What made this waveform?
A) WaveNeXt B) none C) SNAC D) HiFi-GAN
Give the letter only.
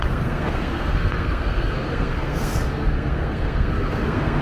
C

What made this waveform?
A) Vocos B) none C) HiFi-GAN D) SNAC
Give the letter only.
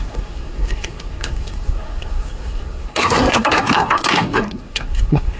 D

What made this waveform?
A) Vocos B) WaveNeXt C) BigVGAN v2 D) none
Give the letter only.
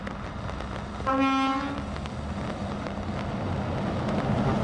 D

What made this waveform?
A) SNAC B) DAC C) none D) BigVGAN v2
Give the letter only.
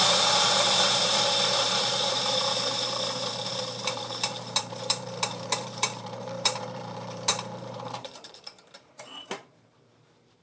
D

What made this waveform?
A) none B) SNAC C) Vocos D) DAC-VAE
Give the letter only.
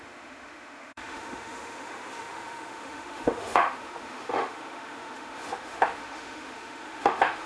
D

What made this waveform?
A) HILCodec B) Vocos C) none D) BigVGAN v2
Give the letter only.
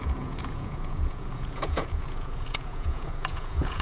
B